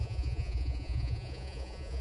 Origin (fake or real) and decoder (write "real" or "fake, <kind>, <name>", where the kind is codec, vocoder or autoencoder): fake, vocoder, Vocos